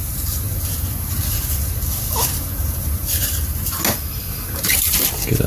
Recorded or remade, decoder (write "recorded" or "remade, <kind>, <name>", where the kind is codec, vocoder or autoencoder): recorded